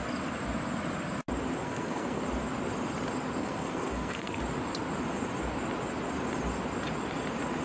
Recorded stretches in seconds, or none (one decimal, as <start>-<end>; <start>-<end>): 0.0-1.6; 2.2-3.4; 4.4-7.6